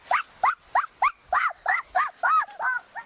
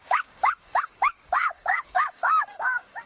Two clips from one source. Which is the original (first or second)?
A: first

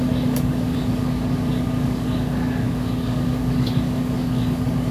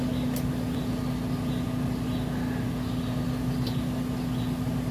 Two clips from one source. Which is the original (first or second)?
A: second